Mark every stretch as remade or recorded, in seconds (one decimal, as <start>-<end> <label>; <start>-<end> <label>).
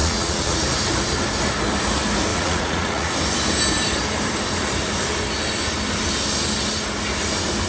0.0-0.6 remade; 0.6-2.3 recorded; 2.3-3.1 remade; 3.1-7.7 recorded